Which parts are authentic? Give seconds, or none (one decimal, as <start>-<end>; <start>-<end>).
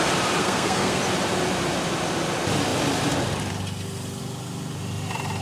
0.0-0.4; 1.0-5.4